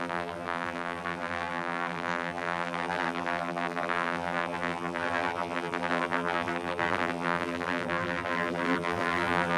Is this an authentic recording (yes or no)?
no